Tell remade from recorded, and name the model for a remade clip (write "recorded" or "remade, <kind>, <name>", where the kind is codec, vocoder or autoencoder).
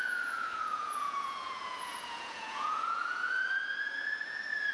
remade, vocoder, Vocos